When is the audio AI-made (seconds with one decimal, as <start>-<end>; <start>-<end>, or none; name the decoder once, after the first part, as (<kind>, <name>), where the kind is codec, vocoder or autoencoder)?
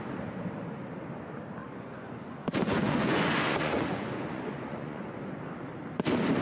1.6-5.4 (vocoder, Vocos)